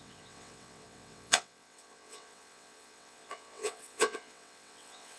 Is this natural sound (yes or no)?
no